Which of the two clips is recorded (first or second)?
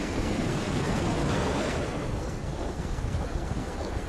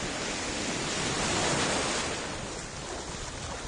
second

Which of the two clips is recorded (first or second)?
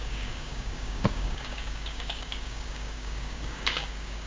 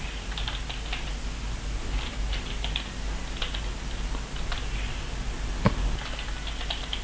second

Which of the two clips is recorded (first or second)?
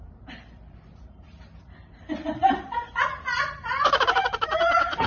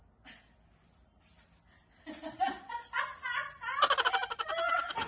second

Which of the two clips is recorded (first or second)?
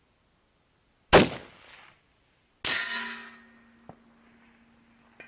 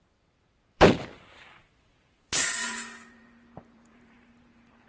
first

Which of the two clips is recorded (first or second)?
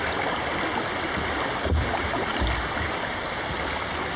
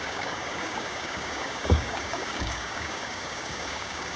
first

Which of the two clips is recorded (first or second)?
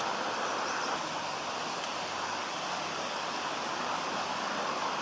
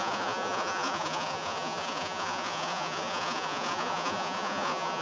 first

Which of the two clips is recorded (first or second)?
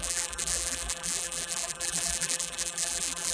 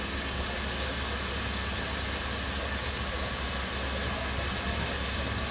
second